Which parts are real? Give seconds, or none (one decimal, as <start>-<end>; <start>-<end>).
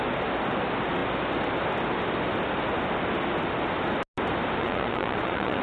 0.0-4.6